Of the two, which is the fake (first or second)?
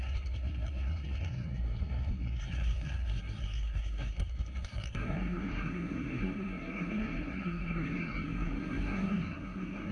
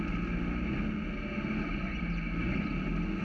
first